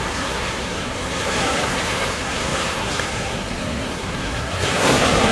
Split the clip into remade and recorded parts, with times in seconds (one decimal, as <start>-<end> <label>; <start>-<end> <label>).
0.0-5.3 remade